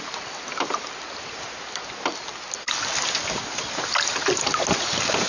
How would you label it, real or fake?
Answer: real